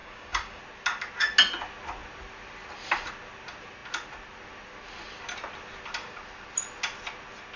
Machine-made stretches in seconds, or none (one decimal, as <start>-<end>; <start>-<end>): 0.0-0.6